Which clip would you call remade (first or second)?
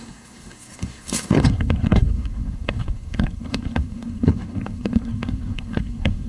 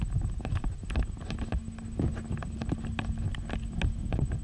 first